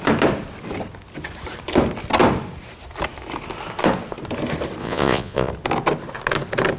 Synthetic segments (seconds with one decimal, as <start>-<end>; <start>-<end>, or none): 4.8-5.5